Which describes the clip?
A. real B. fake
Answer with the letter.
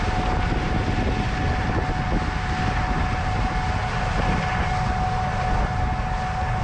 A